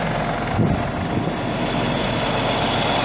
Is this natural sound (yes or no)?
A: yes